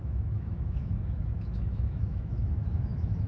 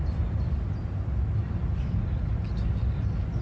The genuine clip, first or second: second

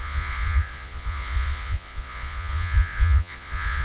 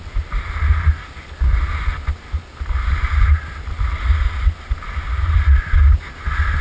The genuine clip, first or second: second